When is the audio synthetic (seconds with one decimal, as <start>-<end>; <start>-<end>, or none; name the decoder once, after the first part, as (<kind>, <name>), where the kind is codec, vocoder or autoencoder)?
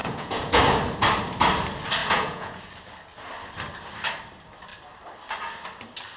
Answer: 0.0-0.6 (vocoder, Vocos); 2.0-2.6